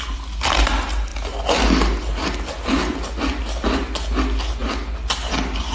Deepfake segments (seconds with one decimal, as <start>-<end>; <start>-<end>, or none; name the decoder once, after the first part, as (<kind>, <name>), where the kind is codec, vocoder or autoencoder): none